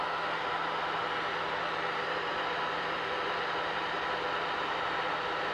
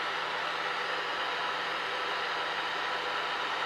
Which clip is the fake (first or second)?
first